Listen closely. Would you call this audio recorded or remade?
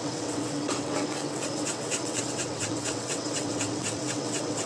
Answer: remade